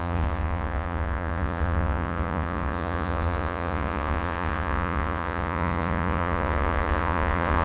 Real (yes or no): no